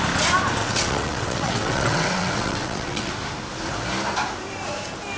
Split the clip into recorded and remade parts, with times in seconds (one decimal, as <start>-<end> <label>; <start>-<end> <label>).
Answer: 0.0-0.6 recorded; 0.6-3.1 remade; 3.1-5.2 recorded